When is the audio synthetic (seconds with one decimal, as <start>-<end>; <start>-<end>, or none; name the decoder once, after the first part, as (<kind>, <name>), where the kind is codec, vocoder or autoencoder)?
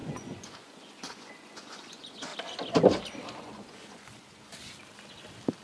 0.0-2.3 (vocoder, Vocos); 3.4-4.5